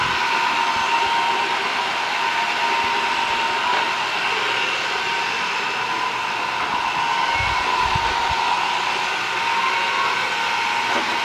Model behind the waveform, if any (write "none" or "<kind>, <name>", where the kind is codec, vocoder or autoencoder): none